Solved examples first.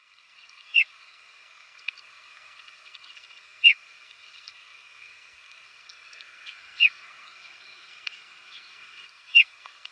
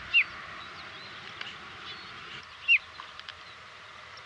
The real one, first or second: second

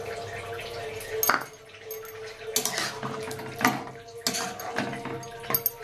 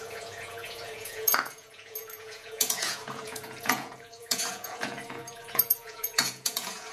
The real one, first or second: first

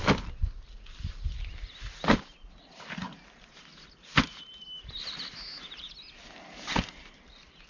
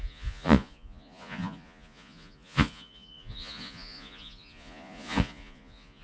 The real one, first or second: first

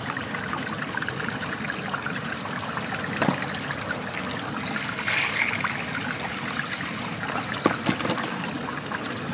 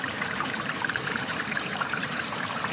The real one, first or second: first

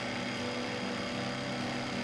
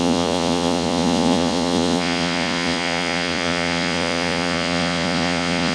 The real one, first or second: first